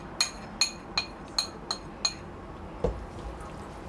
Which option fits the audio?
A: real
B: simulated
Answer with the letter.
A